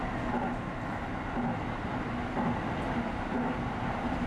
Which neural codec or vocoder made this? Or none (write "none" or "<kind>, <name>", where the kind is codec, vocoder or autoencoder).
none